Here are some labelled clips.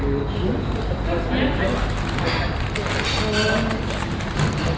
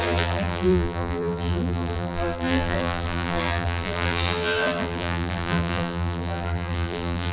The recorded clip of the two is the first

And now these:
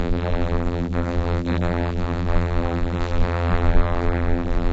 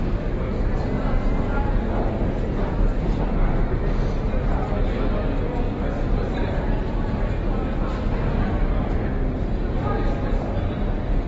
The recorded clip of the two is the second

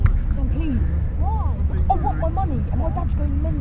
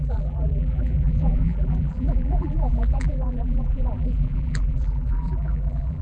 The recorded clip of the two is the first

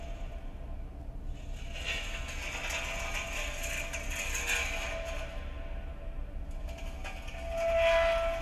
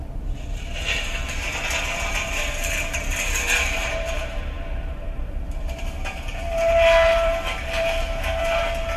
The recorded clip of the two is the first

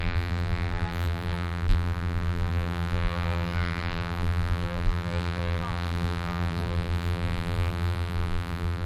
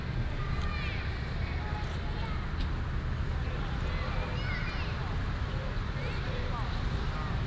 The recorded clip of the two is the second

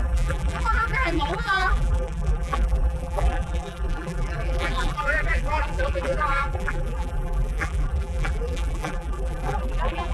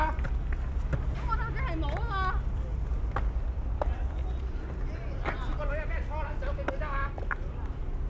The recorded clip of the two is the second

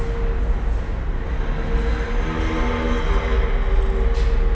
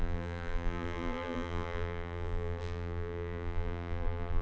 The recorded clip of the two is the first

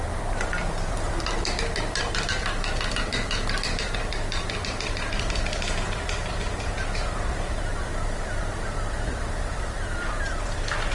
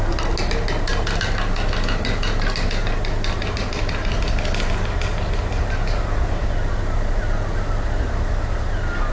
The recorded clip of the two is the second